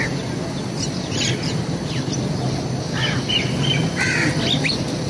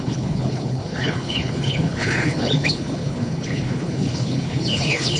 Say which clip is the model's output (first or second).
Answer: second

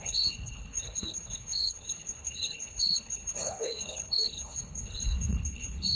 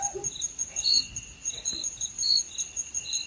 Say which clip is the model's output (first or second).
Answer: first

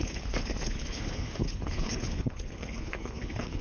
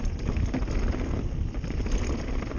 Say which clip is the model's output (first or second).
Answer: first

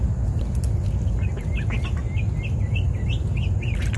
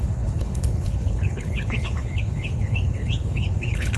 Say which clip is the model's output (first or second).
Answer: second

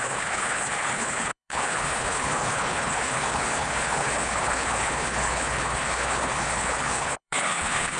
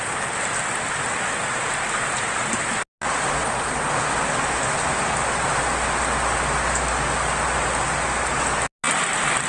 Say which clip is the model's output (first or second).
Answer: first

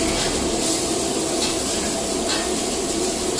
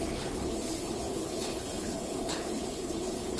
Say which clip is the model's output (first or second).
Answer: second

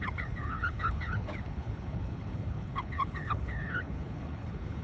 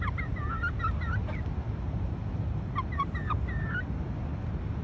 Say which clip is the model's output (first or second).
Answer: first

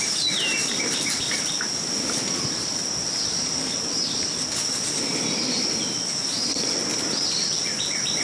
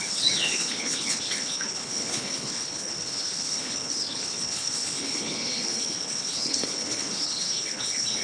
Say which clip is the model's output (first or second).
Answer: second